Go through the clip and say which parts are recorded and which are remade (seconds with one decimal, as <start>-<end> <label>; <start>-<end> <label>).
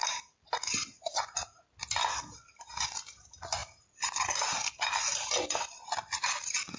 0.0-6.8 recorded